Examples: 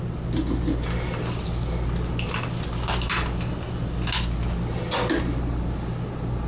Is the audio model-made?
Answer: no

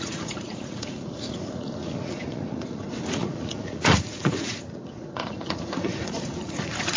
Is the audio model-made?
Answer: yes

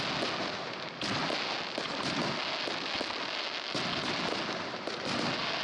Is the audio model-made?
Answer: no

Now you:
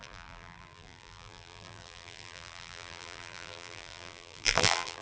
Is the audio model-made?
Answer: yes